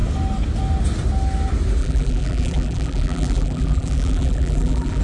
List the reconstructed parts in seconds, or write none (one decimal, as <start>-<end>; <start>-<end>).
1.8-5.0